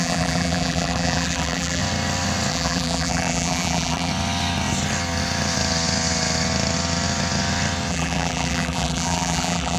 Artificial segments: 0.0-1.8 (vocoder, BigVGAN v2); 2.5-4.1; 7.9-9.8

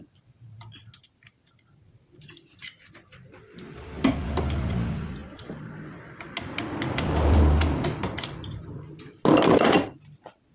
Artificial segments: none

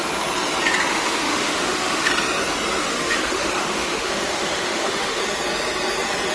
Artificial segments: 0.9-2.1 (autoencoder, DAC-VAE); 2.8-5.2